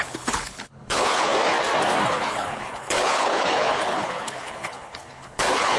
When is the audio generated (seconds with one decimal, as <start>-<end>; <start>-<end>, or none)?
0.0-1.3; 2.1-5.8